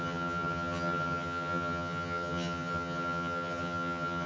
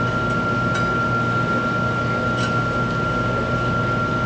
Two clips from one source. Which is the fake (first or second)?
first